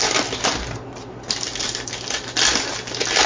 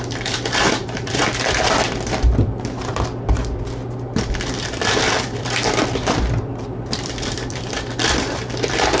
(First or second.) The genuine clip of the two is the first